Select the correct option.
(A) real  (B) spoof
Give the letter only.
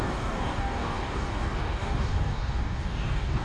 B